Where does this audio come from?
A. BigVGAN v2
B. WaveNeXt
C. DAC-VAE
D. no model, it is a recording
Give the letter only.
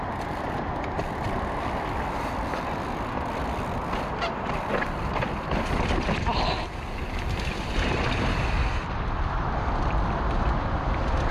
A